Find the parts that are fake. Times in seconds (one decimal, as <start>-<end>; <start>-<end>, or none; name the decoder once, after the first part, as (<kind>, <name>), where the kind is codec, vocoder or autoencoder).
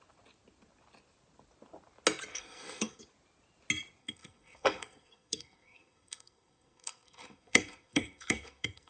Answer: 2.3-3.0 (codec, SNAC); 4.0-8.9